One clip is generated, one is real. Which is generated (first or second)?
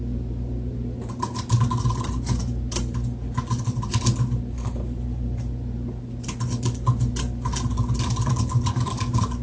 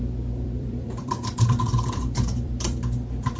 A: second